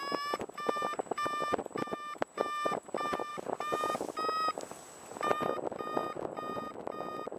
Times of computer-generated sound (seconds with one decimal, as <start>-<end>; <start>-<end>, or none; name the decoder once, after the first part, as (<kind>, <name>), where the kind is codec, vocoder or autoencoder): none